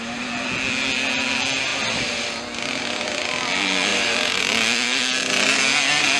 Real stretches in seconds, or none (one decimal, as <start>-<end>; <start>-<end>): 0.0-3.9; 4.4-6.2